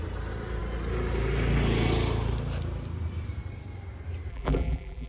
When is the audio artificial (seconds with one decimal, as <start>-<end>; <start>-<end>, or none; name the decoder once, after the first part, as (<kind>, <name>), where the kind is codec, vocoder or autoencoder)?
4.3-5.1 (vocoder, BigVGAN v2)